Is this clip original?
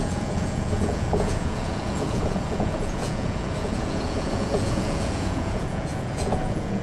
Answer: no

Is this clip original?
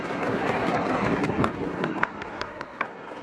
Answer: no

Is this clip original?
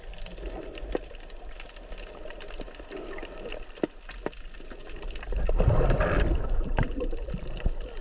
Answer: yes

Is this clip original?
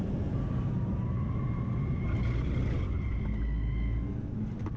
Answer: yes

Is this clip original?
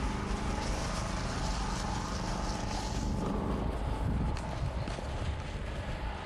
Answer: yes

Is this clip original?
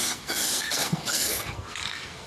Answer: no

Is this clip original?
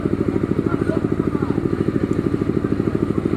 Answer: yes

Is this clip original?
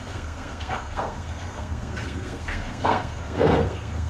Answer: no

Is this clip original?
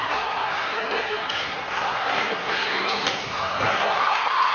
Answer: no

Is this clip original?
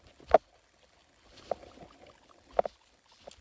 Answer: yes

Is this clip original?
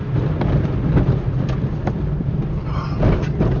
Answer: yes